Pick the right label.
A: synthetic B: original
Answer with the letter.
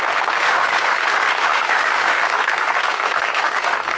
A